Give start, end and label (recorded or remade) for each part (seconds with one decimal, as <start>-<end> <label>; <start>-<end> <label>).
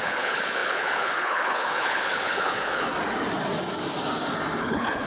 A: 0.0-2.9 remade; 2.9-4.6 recorded; 4.6-5.1 remade